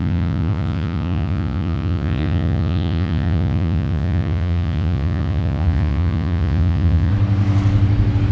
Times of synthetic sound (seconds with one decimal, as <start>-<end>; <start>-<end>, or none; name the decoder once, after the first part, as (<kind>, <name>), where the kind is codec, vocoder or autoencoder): 0.0-7.1 (vocoder, Vocos)